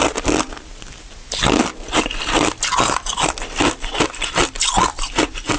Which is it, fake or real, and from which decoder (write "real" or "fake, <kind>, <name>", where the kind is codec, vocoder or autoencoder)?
real